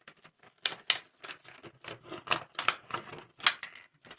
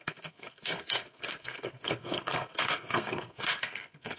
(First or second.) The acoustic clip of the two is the first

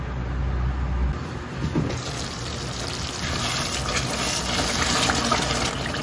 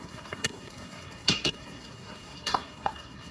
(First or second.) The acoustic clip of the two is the first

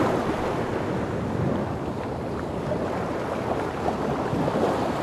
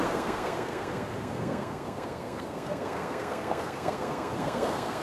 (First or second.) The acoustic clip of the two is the first